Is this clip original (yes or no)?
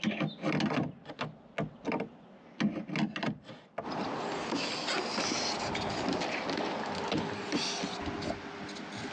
yes